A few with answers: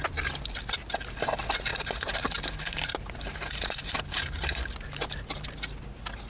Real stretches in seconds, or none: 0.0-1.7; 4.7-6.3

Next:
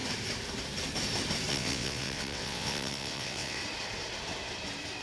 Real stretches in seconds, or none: 0.0-1.5; 3.6-5.0

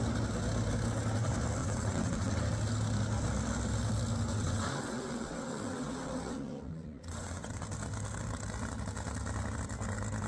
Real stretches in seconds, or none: 0.0-1.6; 2.4-4.3; 7.6-10.3

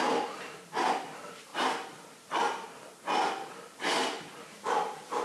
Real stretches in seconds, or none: 0.0-5.2

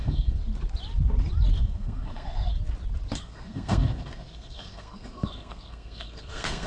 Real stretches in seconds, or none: 0.4-1.5; 2.5-3.2